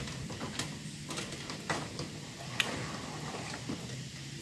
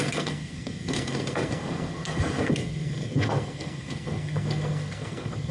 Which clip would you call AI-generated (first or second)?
second